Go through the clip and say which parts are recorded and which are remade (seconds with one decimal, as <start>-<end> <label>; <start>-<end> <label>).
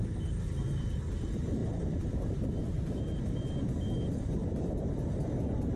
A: 0.0-1.6 recorded; 1.6-3.2 remade; 3.2-4.4 recorded; 4.4-5.3 remade; 5.3-5.8 recorded